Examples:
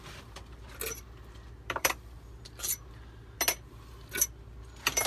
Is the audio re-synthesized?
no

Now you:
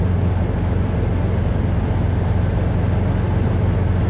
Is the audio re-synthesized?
no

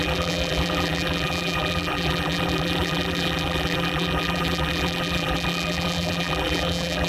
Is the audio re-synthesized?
yes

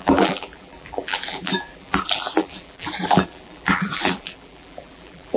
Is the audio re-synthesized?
yes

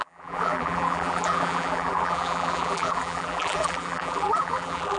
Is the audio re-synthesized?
yes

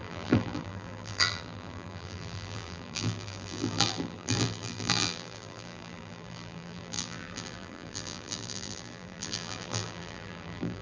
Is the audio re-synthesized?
yes